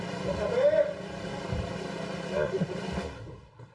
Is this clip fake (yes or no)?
no